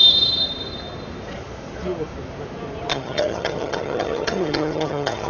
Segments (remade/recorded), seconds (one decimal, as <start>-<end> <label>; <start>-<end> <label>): 0.0-2.9 recorded; 2.9-5.3 remade